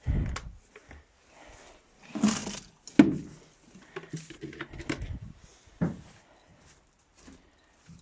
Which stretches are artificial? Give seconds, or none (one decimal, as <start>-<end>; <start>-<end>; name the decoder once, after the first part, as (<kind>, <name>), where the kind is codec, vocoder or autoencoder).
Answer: none